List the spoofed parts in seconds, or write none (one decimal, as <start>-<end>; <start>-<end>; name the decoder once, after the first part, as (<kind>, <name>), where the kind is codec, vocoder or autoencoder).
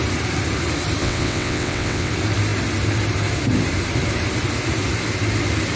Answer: 1.0-2.1 (vocoder, WaveNeXt)